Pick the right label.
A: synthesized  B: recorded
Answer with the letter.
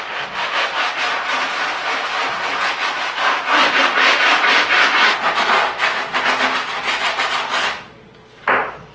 B